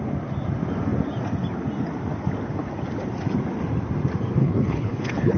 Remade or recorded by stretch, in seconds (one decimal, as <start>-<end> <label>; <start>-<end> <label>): 0.0-4.4 recorded; 4.4-5.4 remade

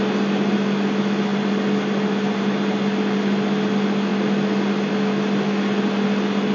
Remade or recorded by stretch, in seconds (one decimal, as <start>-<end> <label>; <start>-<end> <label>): 0.0-6.5 recorded

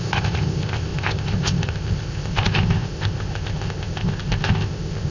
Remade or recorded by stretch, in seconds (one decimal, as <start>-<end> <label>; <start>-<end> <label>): 0.0-5.1 remade

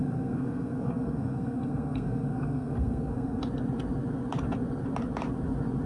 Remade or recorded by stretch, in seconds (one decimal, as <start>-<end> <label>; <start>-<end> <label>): 0.0-3.4 remade; 3.4-5.9 recorded

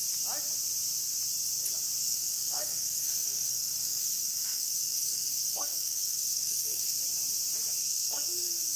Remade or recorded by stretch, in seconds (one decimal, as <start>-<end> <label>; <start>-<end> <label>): 0.0-2.0 recorded; 2.0-7.0 remade; 7.0-7.8 recorded; 7.8-8.8 remade